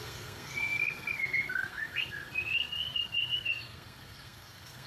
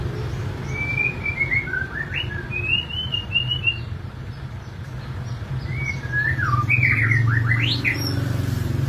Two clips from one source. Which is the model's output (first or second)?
first